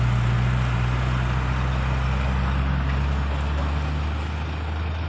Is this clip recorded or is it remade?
recorded